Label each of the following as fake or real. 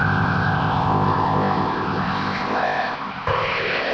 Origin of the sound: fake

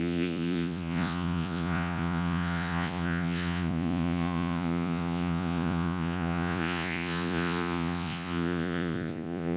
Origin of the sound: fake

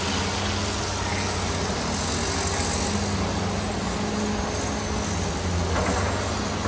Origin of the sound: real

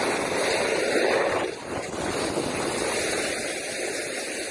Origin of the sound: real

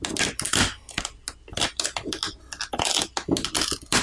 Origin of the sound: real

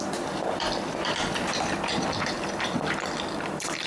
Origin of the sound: fake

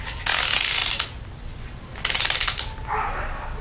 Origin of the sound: real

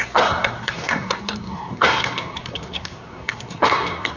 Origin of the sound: fake